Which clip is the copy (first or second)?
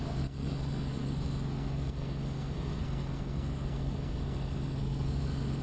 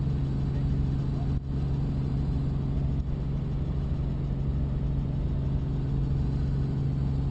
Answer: first